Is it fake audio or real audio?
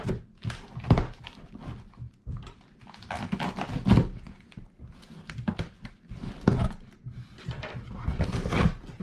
real